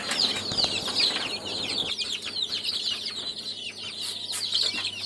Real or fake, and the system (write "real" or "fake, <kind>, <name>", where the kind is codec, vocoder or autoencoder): real